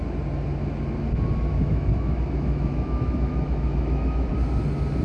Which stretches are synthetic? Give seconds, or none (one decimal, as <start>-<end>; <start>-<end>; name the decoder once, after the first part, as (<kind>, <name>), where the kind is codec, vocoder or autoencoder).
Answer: 1.5-4.3 (autoencoder, DAC-VAE)